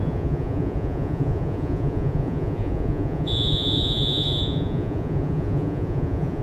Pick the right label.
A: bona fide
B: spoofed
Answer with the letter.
B